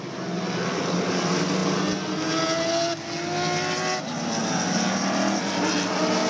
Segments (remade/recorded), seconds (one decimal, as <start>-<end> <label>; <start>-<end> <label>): 0.0-6.3 recorded